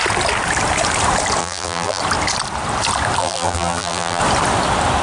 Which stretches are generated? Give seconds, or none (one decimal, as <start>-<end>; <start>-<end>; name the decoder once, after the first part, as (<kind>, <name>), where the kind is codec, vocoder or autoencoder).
1.4-2.0 (vocoder, BigVGAN v2); 3.2-4.2